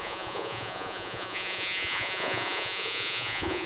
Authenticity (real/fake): fake